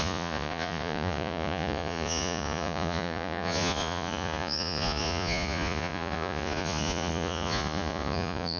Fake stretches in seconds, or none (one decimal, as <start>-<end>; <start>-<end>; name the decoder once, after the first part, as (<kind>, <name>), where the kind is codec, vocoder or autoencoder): 0.0-8.6 (vocoder, Vocos)